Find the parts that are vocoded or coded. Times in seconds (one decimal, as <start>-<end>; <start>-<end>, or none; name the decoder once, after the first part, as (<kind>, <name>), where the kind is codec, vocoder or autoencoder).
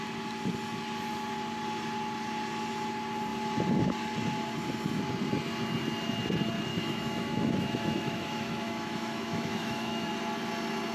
6.7-10.1 (autoencoder, DAC-VAE)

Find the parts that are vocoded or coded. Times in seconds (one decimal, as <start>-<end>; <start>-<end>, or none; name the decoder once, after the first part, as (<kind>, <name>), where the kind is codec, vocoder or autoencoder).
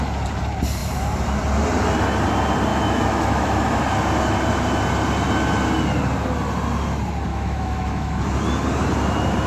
2.7-3.8 (autoencoder, DAC-VAE); 7.3-8.2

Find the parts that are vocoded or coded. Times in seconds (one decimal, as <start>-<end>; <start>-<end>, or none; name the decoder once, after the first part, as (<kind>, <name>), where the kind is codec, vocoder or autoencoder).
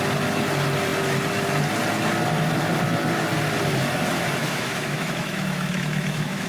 4.4-6.5 (autoencoder, DAC-VAE)